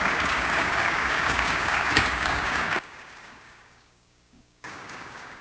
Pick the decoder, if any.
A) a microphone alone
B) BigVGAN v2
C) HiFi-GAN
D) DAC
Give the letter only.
D